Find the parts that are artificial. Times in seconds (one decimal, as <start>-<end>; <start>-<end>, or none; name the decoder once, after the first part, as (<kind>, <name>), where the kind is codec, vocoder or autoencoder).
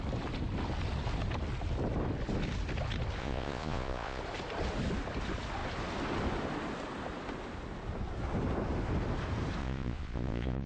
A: 3.2-4.2 (vocoder, Vocos); 9.6-10.7